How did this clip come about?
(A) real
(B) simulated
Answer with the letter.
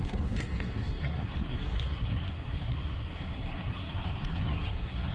B